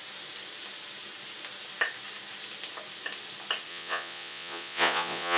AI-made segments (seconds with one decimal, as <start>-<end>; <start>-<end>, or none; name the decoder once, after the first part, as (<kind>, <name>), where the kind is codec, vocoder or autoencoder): 3.7-5.4 (vocoder, Vocos)